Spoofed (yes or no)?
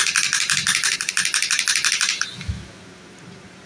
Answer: no